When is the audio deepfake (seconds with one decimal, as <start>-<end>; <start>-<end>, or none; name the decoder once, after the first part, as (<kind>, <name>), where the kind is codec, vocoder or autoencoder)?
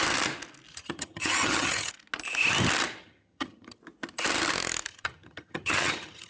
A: 0.7-1.9 (vocoder, HiFi-GAN); 3.0-3.8; 4.9-6.3